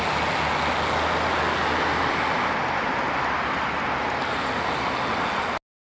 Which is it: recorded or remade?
recorded